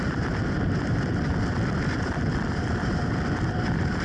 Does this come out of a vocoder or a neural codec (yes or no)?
no